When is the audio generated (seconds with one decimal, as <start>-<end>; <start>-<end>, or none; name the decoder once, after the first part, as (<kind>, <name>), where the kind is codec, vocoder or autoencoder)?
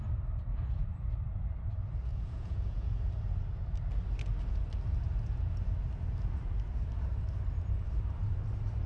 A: 2.1-3.0 (vocoder, Vocos)